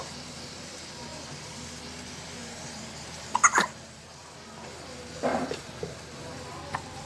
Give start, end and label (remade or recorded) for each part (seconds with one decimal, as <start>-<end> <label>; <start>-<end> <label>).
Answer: 0.0-1.1 recorded; 1.1-1.8 remade; 1.8-2.4 recorded; 2.4-4.1 remade; 4.1-5.3 recorded; 5.3-6.2 remade; 6.2-7.1 recorded